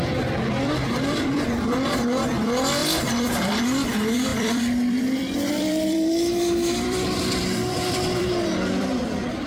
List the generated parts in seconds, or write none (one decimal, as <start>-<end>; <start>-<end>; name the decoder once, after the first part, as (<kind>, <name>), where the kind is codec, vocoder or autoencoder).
0.0-9.5 (vocoder, BigVGAN v2)